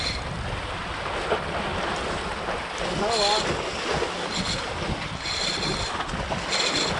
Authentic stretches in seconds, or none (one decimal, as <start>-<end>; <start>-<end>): 0.0-7.0